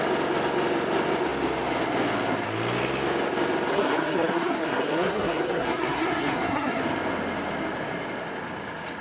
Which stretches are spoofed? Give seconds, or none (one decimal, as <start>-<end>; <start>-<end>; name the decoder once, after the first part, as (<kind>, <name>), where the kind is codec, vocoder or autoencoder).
3.7-6.8 (codec, SNAC)